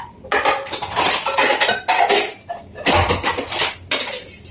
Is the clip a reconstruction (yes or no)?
no